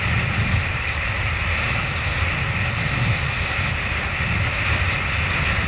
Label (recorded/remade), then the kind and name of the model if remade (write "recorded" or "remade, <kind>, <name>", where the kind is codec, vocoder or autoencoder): recorded